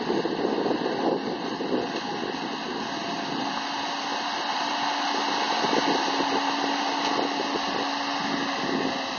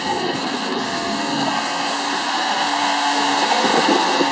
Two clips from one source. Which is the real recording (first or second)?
first